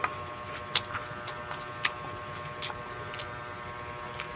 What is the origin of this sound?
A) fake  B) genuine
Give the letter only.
B